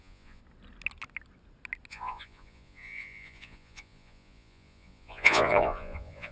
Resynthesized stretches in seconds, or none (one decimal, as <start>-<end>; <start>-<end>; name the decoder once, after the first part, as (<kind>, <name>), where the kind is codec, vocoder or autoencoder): 0.0-0.4 (vocoder, Vocos); 1.9-6.3